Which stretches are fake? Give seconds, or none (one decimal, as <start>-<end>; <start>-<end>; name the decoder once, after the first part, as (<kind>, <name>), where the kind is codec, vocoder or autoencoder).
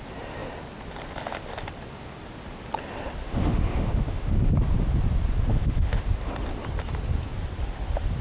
3.2-4.5 (autoencoder, DAC-VAE); 5.5-6.1